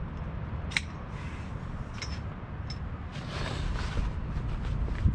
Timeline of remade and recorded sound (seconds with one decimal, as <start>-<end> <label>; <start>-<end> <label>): 0.0-5.1 recorded